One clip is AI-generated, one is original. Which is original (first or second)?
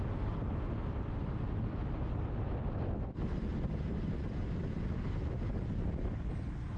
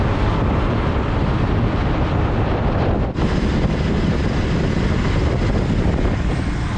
first